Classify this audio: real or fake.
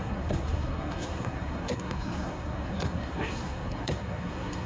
fake